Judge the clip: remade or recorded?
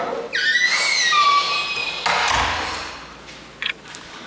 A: recorded